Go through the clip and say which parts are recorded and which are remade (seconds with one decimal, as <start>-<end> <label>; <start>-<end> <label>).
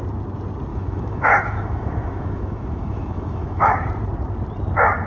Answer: 0.0-0.7 recorded; 0.7-3.8 remade; 3.8-5.1 recorded